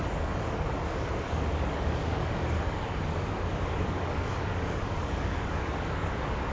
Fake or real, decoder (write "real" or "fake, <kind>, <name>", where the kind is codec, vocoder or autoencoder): fake, codec, DAC